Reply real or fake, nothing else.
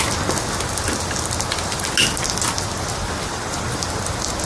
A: real